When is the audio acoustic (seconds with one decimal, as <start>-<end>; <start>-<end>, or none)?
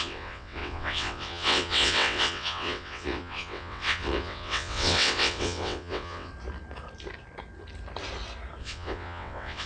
6.3-8.6